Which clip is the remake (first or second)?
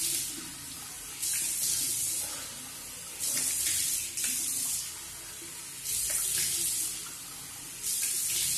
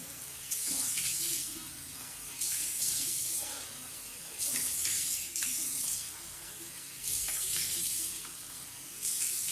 second